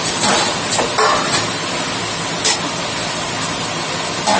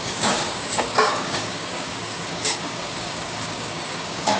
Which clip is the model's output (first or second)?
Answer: second